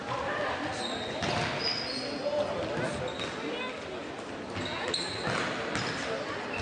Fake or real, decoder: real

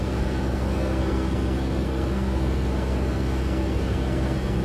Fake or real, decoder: fake, codec, SNAC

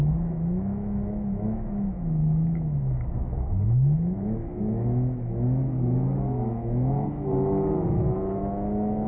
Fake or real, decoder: fake, autoencoder, DAC-VAE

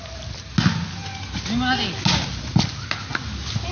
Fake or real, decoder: real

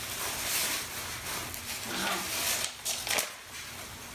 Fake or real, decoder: real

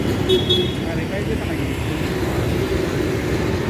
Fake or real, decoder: fake, vocoder, BigVGAN v2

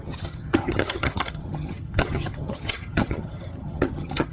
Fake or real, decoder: fake, vocoder, HiFi-GAN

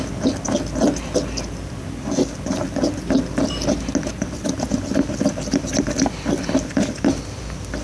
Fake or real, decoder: real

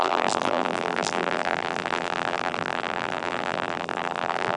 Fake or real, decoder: fake, vocoder, BigVGAN v2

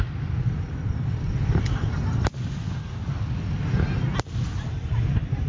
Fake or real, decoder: real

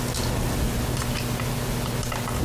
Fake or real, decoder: real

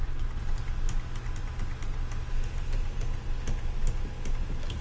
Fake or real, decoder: real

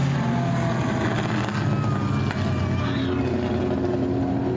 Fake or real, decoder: real